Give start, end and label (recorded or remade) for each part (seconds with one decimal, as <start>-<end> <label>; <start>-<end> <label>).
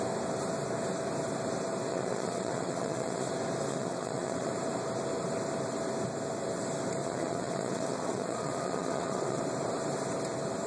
0.0-1.9 recorded; 1.9-3.3 remade; 3.3-3.7 recorded; 3.7-4.5 remade; 4.5-7.0 recorded; 7.0-9.4 remade; 9.4-10.7 recorded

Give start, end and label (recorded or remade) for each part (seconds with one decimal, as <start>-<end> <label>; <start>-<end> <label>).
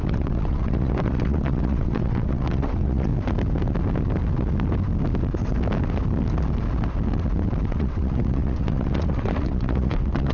0.0-3.1 remade; 3.1-7.7 recorded; 7.7-10.3 remade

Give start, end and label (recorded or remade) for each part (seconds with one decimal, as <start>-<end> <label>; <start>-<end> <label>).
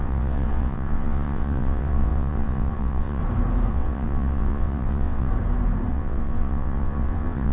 0.0-3.2 remade; 3.2-3.7 recorded; 3.7-5.3 remade; 5.3-5.9 recorded; 5.9-7.5 remade